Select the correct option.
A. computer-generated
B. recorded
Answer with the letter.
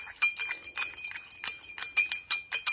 B